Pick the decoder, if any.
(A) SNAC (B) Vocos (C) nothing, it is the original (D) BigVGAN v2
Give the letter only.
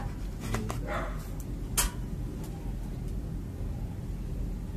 C